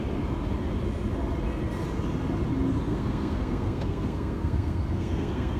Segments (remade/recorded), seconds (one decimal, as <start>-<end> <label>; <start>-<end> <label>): 0.0-2.9 recorded; 2.9-5.6 remade